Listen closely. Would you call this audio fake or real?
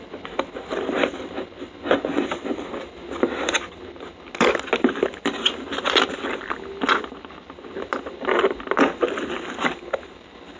real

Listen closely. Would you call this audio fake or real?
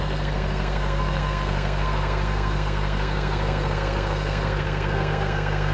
fake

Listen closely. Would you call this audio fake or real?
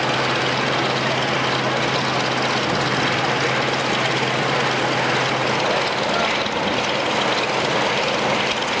real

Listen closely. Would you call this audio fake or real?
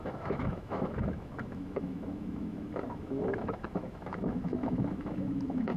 fake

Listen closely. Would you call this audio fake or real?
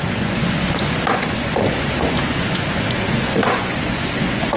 fake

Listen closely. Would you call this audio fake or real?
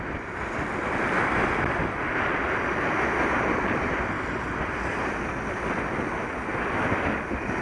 real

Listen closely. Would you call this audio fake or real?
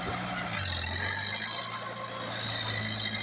real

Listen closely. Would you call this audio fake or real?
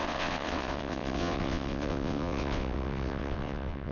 fake